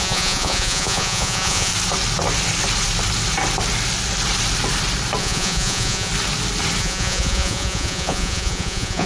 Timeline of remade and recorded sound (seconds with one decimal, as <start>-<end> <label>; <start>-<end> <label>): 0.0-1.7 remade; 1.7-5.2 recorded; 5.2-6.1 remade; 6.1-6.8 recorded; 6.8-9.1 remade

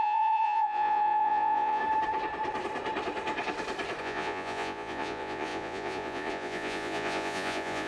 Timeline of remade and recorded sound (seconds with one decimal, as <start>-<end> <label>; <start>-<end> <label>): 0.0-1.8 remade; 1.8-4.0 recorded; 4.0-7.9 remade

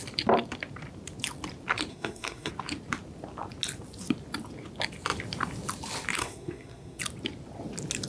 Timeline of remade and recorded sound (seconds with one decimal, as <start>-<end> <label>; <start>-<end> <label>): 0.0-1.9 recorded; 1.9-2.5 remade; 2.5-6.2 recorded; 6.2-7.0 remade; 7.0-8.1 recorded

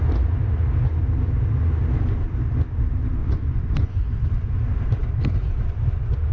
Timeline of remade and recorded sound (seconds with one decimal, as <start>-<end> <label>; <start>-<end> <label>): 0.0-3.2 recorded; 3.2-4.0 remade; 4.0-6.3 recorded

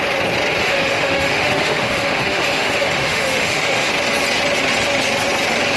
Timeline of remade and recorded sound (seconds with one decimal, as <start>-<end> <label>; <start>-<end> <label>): 0.0-0.6 recorded; 0.6-3.9 remade; 3.9-5.8 recorded

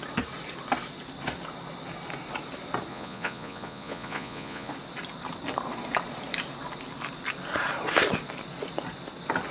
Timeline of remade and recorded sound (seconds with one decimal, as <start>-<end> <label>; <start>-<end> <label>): 0.0-2.9 recorded; 2.9-4.7 remade; 4.7-9.5 recorded

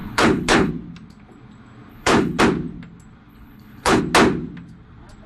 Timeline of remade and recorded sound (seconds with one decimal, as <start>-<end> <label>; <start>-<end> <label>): 0.0-0.7 remade; 0.7-1.9 recorded; 1.9-2.4 remade; 2.4-3.3 recorded; 3.3-4.0 remade; 4.0-5.3 recorded

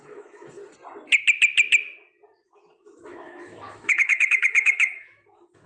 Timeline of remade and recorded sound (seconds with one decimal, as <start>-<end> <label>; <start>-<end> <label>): 0.0-0.6 remade; 0.6-2.5 recorded; 2.5-5.7 remade